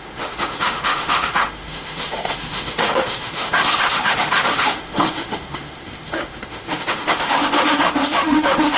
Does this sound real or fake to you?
fake